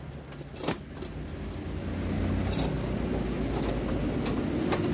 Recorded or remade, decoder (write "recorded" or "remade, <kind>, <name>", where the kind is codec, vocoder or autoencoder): recorded